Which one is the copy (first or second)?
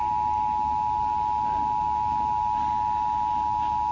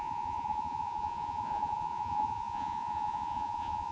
second